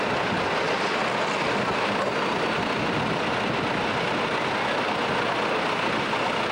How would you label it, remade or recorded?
recorded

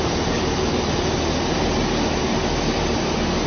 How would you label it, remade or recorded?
recorded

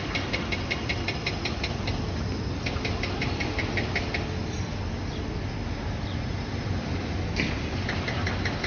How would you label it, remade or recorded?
recorded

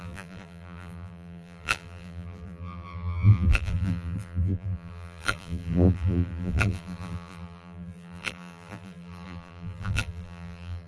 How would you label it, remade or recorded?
remade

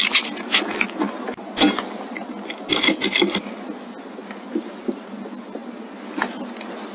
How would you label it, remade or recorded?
recorded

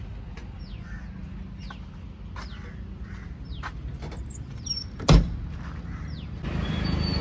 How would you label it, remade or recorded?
recorded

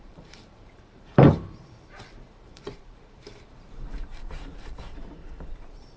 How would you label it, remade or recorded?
remade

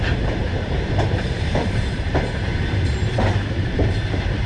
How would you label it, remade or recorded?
remade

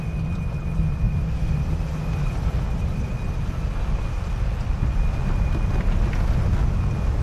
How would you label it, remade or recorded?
recorded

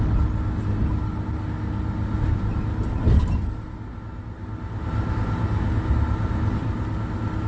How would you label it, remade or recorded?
recorded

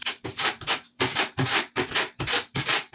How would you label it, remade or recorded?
remade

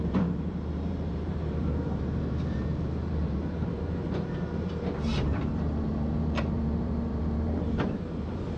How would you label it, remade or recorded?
remade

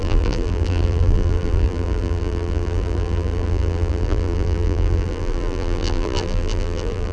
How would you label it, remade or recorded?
remade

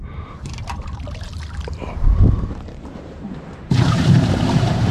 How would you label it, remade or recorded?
remade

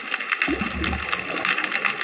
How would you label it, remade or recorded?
recorded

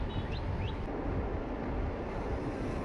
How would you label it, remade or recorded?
recorded